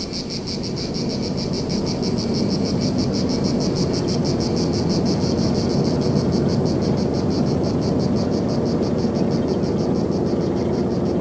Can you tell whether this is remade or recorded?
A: recorded